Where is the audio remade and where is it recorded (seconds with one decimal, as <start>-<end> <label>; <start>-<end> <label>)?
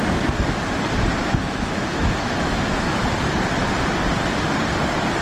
0.0-1.2 recorded; 1.2-3.0 remade; 3.0-5.2 recorded